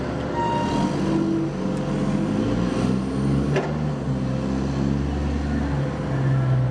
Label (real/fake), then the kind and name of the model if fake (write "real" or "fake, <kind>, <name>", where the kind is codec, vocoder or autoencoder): real